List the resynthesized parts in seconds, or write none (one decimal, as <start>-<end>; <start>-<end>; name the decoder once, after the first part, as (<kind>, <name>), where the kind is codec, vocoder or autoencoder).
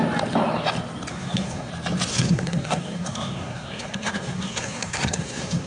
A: 1.1-1.7 (codec, SNAC); 2.1-5.7